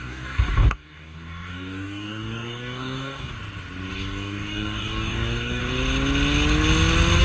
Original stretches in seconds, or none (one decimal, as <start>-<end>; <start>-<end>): 3.3-3.9; 5.6-7.2